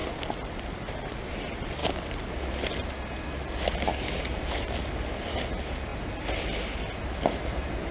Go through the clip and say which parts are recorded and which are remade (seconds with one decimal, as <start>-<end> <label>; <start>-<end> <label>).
0.0-7.9 recorded